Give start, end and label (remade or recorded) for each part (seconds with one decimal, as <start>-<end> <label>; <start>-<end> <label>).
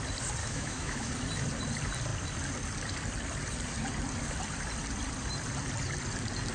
0.0-0.4 recorded; 0.4-1.1 remade; 1.1-6.5 recorded